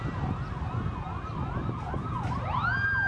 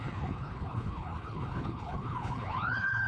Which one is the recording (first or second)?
first